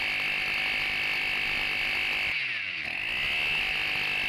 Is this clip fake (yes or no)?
no